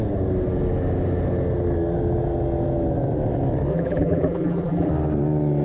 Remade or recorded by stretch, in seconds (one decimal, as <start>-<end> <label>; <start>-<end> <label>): 0.0-3.7 recorded; 3.7-4.9 remade; 4.9-5.6 recorded